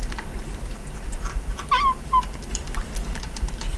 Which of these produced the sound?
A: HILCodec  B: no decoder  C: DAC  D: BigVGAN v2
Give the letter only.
D